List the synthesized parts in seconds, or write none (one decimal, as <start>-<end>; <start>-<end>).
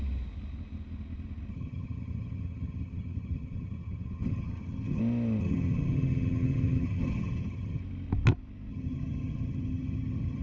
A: 1.5-5.0; 5.4-7.8; 8.7-10.4